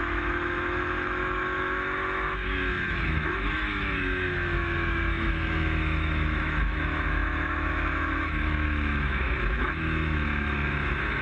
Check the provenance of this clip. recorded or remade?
remade